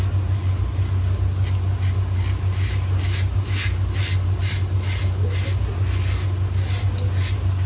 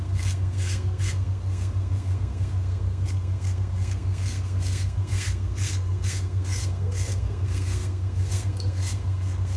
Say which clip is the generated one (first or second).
second